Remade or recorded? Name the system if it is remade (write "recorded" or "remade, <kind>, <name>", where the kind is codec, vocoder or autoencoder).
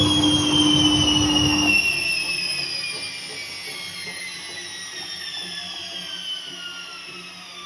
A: recorded